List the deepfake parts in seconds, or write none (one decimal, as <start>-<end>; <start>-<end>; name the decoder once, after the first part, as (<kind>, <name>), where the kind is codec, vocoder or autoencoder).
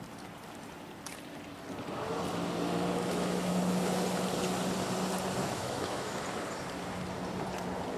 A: 3.1-3.6 (autoencoder, DAC-VAE); 5.4-6.2